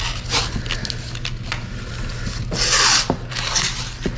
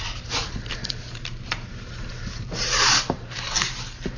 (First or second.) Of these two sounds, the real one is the first